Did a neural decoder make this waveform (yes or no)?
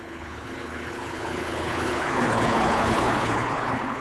yes